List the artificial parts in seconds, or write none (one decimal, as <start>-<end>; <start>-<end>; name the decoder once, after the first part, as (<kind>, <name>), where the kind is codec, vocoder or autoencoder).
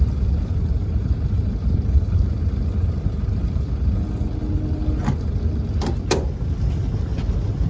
none